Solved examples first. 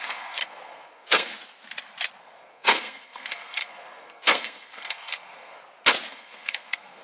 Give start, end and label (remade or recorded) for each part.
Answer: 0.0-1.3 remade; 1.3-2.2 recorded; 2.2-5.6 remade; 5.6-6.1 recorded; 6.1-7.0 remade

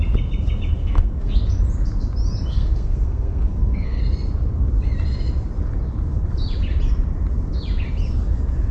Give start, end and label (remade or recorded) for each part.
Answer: 0.0-0.8 recorded; 0.8-1.3 remade; 1.3-2.5 recorded; 2.5-4.0 remade; 4.0-8.7 recorded

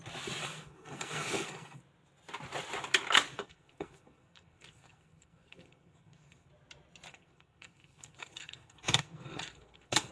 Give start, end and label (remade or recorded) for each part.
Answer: 0.0-0.4 recorded; 0.4-1.8 remade; 1.8-3.3 recorded; 3.3-6.5 remade; 6.5-7.1 recorded; 7.1-10.1 remade

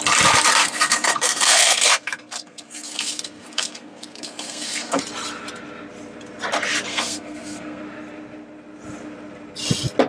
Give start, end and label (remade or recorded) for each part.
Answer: 0.0-0.6 recorded; 0.6-5.0 remade; 5.0-6.9 recorded; 6.9-7.8 remade; 7.8-10.1 recorded

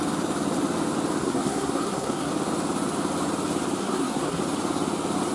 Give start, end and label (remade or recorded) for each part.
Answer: 0.0-1.2 recorded; 1.2-2.3 remade; 2.3-3.8 recorded; 3.8-4.4 remade; 4.4-5.3 recorded